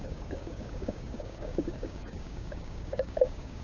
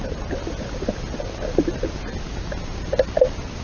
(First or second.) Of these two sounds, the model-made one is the first